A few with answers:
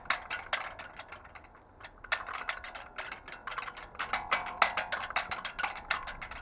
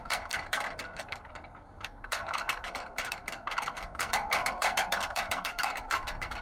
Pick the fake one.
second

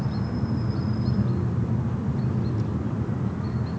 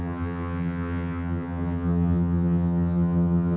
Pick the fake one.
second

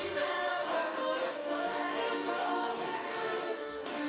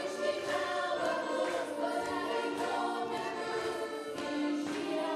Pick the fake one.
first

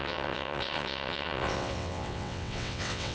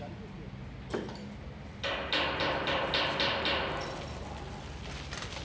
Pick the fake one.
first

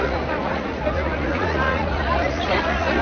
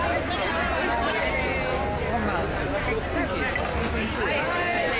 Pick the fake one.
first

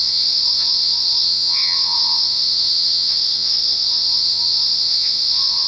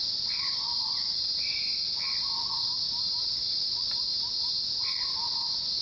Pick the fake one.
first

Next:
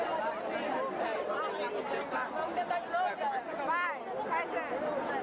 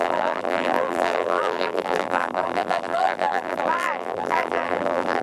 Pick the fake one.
second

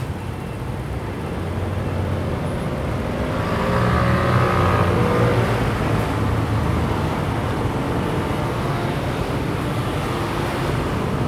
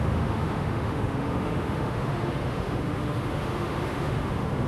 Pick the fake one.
second